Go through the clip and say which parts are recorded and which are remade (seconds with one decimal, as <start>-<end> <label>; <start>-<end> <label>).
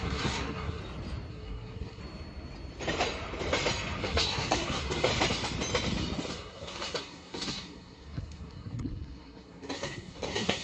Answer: 0.0-0.8 remade; 0.8-1.3 recorded; 1.3-2.0 remade; 2.0-4.0 recorded; 4.0-5.1 remade; 5.1-6.3 recorded; 6.3-10.6 remade